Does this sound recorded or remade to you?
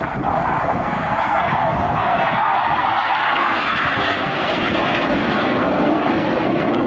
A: remade